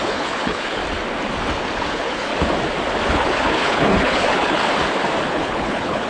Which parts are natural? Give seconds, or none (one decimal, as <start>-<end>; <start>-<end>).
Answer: 0.8-1.9; 2.3-3.1; 4.6-5.3